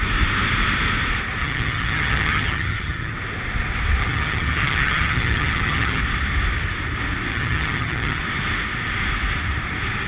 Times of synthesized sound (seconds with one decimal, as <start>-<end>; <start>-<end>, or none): 1.4-3.1; 4.0-6.0; 7.3-8.2